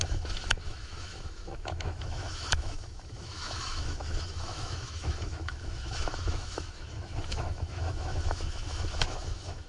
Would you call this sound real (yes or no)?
no